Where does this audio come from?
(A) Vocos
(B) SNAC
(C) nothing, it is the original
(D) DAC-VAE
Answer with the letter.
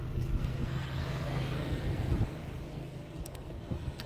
B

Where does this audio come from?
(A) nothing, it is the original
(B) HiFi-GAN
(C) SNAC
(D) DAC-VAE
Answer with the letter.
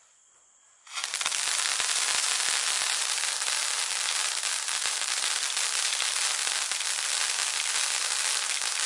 A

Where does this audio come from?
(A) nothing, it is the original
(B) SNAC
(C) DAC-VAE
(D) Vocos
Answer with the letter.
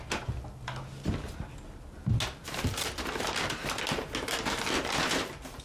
A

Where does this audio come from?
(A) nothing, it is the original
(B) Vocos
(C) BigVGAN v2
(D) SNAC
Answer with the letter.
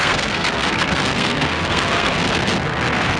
D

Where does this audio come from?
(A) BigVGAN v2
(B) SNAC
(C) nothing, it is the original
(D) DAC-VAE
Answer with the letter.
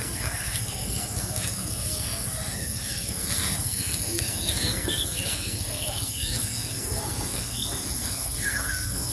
B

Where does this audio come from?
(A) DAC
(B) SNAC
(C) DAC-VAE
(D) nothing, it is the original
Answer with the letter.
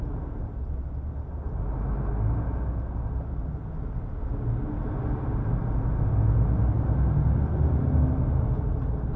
D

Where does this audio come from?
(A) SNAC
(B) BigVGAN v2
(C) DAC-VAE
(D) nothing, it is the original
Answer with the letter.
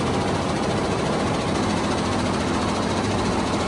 D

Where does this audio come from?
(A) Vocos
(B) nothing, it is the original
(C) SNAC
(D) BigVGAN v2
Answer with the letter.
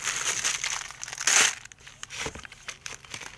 B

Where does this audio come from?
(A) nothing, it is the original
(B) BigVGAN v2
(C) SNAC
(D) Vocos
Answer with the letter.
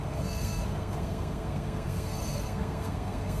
C